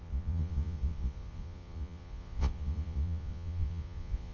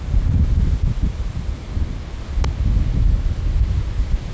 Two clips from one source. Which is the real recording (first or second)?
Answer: second